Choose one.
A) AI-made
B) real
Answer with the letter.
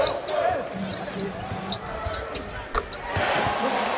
B